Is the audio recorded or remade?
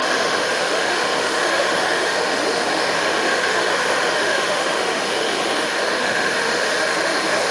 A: remade